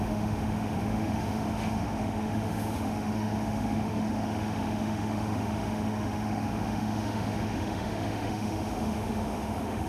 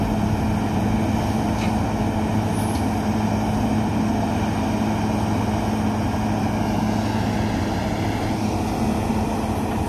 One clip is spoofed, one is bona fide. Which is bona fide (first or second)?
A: second